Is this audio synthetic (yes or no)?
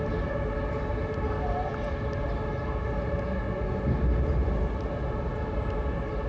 no